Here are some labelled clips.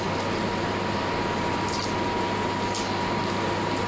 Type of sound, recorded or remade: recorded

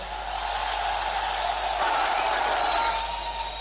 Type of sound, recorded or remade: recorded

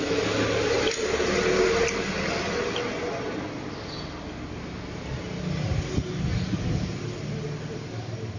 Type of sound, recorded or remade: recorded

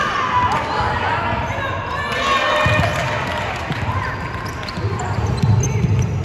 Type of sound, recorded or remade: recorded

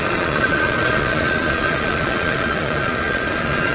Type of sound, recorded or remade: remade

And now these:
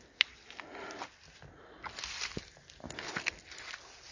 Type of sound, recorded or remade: recorded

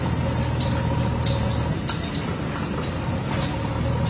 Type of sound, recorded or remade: recorded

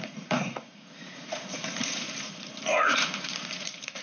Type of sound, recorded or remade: remade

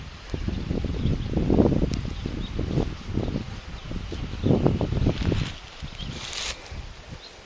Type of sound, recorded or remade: recorded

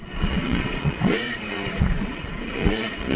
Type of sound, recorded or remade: remade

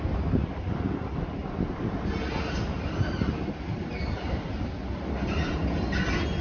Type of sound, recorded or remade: recorded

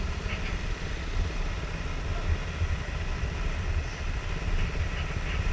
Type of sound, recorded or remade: recorded